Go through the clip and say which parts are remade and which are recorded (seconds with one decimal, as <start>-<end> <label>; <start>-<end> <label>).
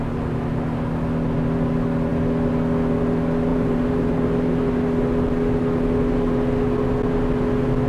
0.0-3.5 recorded; 3.5-4.7 remade; 4.7-7.9 recorded